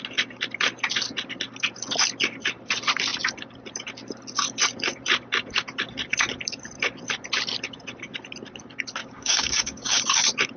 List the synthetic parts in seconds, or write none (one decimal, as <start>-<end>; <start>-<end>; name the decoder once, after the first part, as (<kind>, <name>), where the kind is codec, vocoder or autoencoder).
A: 9.0-10.0 (codec, DAC)

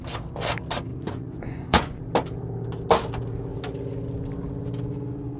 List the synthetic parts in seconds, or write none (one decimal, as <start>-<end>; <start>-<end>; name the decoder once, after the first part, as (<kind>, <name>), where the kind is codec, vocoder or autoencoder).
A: 0.9-2.0 (vocoder, Vocos)

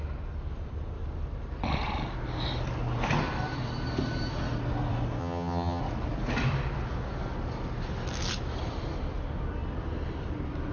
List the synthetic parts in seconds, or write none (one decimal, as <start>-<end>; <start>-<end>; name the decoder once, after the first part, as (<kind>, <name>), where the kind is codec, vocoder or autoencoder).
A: 5.2-5.8 (vocoder, HiFi-GAN)

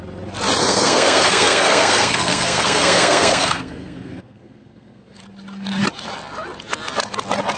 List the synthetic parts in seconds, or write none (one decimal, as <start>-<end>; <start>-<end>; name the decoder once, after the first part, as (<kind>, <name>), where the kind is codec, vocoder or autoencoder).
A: 0.6-5.2 (codec, SNAC)

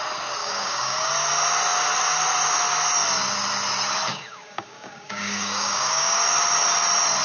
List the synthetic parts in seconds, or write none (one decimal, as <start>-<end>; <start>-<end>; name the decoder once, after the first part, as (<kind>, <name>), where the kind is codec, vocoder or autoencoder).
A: 0.4-1.1 (codec, DAC); 4.1-6.2

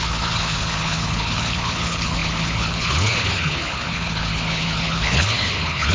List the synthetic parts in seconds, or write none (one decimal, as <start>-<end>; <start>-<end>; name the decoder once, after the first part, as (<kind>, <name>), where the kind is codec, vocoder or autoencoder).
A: 0.0-5.9 (codec, HILCodec)